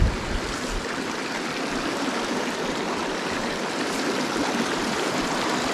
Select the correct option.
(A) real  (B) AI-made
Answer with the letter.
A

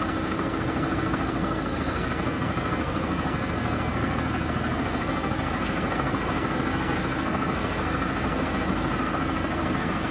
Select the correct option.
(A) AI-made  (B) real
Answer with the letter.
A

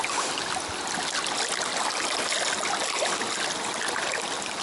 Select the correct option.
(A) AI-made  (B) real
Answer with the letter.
B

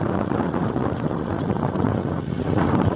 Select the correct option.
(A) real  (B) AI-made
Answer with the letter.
B